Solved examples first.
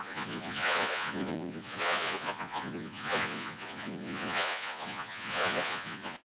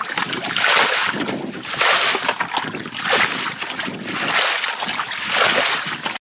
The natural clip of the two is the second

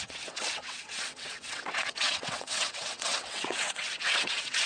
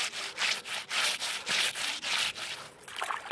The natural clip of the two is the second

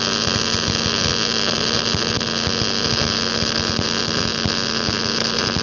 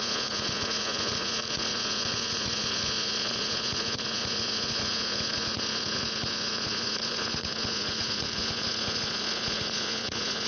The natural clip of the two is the first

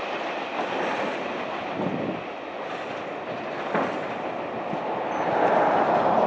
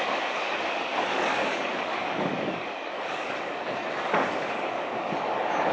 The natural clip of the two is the first